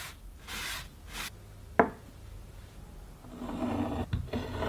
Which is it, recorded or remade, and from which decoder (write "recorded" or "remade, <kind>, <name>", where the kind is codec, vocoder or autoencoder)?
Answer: recorded